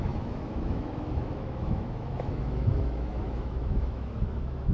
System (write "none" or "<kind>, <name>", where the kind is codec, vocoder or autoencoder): autoencoder, DAC-VAE